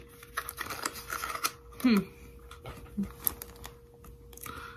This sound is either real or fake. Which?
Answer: real